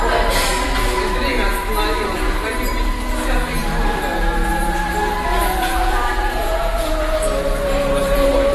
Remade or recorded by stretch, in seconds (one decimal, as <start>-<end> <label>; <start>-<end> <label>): 0.0-5.3 recorded; 5.3-6.9 remade; 6.9-8.5 recorded